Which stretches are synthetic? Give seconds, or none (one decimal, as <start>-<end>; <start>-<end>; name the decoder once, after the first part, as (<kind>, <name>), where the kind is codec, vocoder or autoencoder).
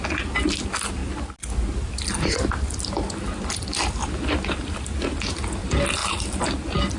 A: none